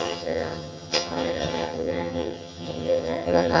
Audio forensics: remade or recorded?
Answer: remade